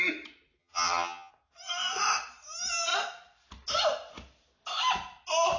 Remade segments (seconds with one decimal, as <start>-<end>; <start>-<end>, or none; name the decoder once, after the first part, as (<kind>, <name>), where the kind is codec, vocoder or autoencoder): 0.6-1.3 (vocoder, HiFi-GAN)